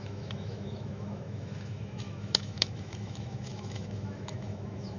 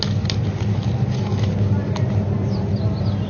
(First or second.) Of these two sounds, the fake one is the first